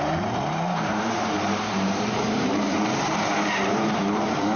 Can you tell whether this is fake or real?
fake